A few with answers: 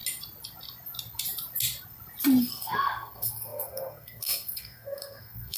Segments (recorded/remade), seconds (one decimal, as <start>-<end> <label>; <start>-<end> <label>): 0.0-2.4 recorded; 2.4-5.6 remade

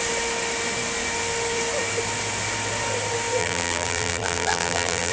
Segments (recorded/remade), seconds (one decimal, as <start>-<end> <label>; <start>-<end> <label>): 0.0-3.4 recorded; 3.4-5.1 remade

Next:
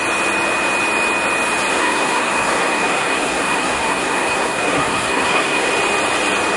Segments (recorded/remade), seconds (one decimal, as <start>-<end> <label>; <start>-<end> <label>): 0.0-1.7 recorded; 1.7-5.7 remade; 5.7-6.6 recorded

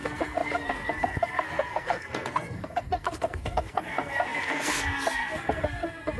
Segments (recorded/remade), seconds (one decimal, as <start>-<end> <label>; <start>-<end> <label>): 0.0-6.2 remade

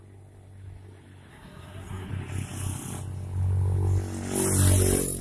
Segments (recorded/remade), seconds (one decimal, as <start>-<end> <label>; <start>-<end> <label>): 0.0-1.3 recorded; 1.3-2.1 remade; 2.1-5.2 recorded

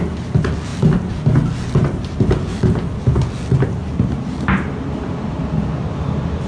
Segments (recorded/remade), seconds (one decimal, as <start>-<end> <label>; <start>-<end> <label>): 0.0-6.5 recorded